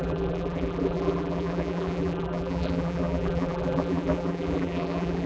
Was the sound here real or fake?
fake